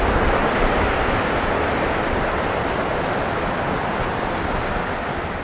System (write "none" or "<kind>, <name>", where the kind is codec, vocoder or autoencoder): none